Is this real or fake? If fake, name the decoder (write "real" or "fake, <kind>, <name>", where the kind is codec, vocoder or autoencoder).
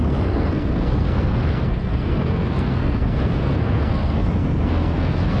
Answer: fake, codec, SNAC